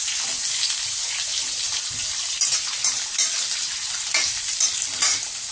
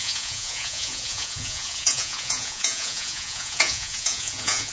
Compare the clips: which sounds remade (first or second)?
second